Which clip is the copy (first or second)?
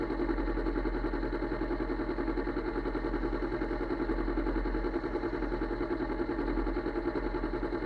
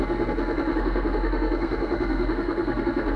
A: second